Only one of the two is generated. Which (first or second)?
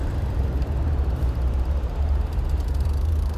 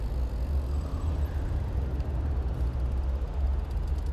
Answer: first